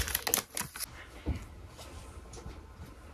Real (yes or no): yes